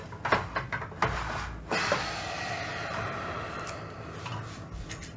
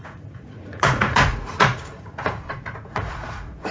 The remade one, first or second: second